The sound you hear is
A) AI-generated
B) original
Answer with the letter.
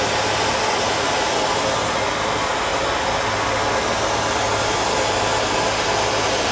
B